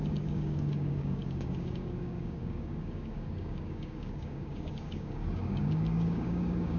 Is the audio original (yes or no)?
no